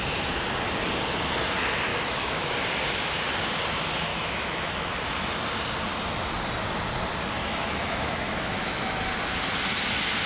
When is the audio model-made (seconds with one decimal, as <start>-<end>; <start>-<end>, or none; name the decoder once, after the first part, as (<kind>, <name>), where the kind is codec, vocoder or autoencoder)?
1.9-2.5 (autoencoder, DAC-VAE); 4.1-4.9; 7.4-9.0